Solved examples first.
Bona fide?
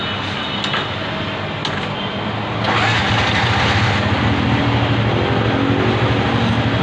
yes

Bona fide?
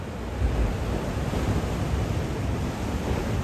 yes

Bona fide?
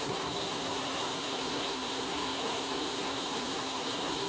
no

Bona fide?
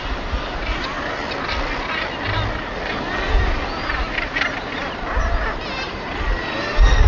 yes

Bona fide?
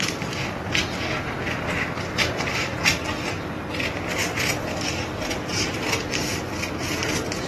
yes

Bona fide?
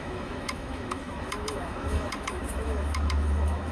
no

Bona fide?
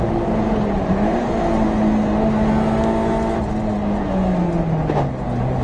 yes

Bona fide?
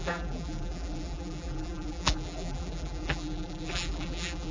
no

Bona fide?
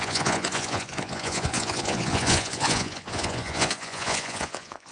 no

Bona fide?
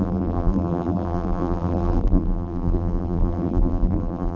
no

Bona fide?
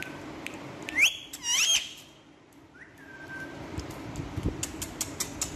yes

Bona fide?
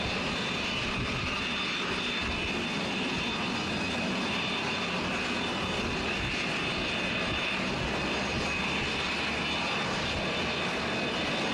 yes